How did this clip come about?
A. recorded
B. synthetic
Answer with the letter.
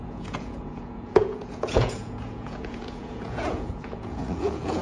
B